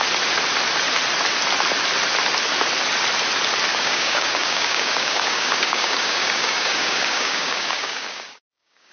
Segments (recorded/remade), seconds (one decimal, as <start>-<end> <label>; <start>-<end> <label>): 0.0-3.7 recorded; 3.7-8.9 remade